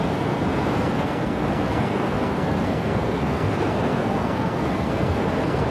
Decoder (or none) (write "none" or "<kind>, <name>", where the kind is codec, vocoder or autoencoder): codec, SNAC